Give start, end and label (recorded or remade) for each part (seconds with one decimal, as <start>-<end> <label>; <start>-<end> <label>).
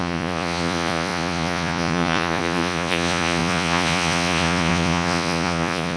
0.0-6.0 remade